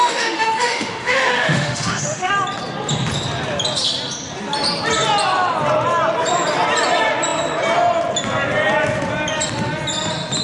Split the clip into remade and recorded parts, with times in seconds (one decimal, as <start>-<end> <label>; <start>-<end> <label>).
0.0-2.3 remade; 2.3-10.4 recorded